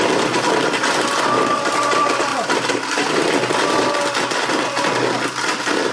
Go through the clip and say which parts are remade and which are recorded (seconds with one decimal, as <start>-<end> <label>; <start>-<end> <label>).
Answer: 0.0-5.9 recorded